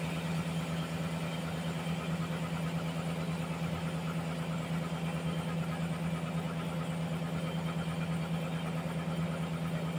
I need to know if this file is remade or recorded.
recorded